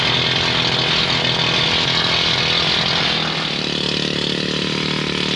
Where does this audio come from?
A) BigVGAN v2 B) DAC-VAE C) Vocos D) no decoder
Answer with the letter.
D